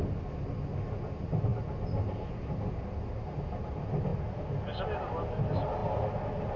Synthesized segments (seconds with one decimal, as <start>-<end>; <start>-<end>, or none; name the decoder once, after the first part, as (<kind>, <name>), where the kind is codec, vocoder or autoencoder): none